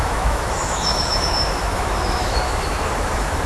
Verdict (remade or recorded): remade